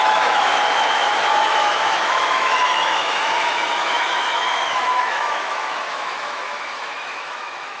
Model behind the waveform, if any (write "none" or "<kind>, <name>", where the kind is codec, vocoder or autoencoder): autoencoder, DAC-VAE